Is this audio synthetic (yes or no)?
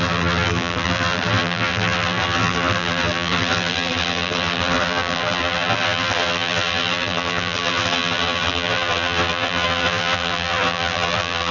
yes